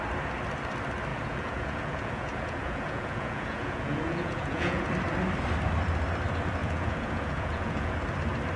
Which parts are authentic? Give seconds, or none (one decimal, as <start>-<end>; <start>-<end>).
0.0-1.1; 4.9-6.6; 7.9-8.6